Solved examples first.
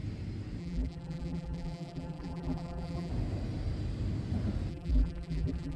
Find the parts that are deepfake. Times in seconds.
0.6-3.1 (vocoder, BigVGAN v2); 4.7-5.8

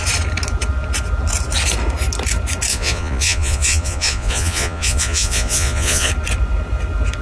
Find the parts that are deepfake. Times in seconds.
2.7-6.1 (vocoder, Vocos)

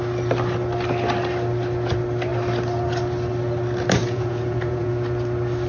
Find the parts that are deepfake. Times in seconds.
4.0-4.9 (vocoder, Vocos)

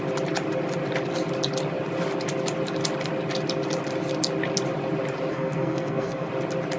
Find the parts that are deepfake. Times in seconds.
5.3-6.3 (codec, SNAC)

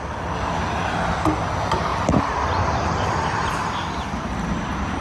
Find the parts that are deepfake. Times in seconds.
1.9-5.0 (vocoder, BigVGAN v2)

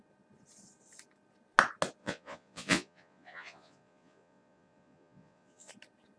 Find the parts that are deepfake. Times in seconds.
2.0-5.7 (vocoder, Vocos)

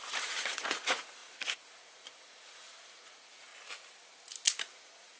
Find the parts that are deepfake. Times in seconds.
0.0-3.5 (vocoder, Vocos); 4.8-5.2